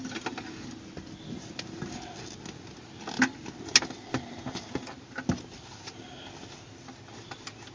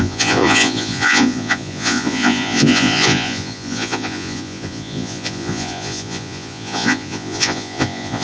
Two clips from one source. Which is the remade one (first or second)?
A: second